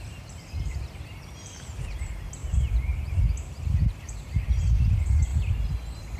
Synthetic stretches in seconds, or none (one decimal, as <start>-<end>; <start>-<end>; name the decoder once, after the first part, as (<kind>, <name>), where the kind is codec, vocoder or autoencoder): 0.0-5.3 (vocoder, BigVGAN v2)